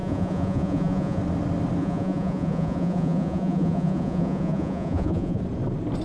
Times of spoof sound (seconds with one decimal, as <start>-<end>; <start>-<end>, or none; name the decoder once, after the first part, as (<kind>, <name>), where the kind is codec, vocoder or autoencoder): 0.0-1.2 (vocoder, Vocos); 1.8-5.4